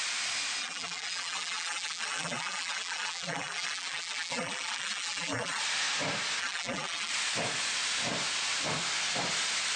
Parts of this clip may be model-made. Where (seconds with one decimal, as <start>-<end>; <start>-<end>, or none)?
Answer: 0.6-5.6; 6.4-7.1